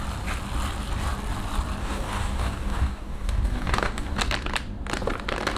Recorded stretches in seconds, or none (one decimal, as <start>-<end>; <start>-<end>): 0.0-1.8; 4.2-5.6